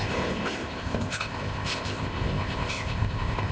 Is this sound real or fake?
fake